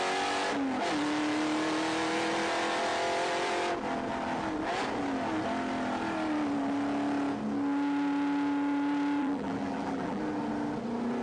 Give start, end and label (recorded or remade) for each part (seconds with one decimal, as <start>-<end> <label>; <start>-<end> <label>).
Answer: 0.0-9.2 recorded; 9.2-10.2 remade; 10.2-11.2 recorded